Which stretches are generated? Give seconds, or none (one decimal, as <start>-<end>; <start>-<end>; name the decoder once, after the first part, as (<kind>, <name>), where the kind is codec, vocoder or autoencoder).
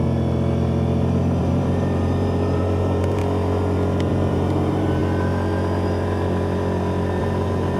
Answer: 1.4-3.2 (vocoder, BigVGAN v2); 4.1-5.0; 7.2-7.8